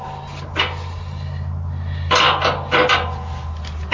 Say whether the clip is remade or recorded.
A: recorded